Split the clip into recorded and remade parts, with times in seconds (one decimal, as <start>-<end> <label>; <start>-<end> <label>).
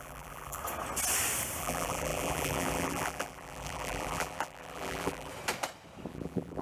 0.0-0.6 remade; 0.6-1.6 recorded; 1.6-5.3 remade; 5.3-6.1 recorded; 6.1-6.6 remade